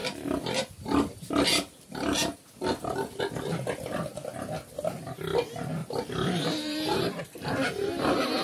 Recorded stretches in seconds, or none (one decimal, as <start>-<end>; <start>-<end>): 0.0-5.8; 7.2-8.4